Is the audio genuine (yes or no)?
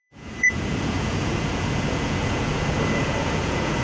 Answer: no